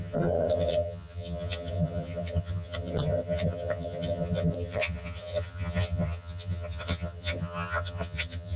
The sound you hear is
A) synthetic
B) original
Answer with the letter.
A